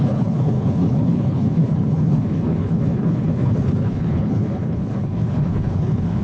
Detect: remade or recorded remade